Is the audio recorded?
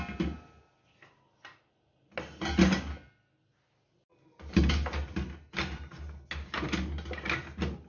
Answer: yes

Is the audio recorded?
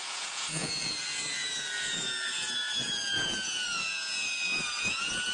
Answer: no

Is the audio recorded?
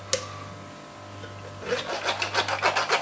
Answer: yes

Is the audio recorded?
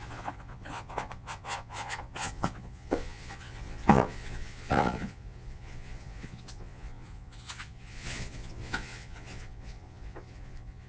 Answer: no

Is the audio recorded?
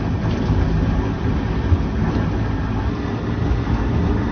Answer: yes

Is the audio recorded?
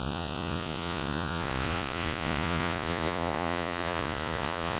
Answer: no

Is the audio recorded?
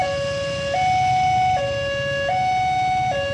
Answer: yes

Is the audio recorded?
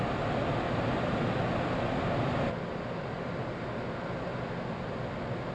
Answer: yes